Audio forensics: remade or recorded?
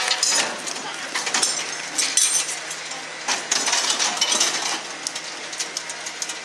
recorded